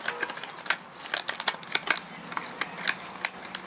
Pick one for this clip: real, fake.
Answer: real